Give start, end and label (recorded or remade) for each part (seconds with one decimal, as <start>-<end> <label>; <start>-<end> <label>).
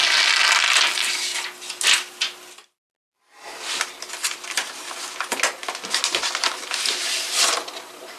0.0-8.2 recorded